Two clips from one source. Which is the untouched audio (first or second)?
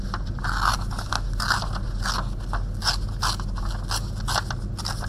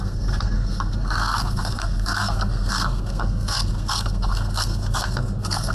first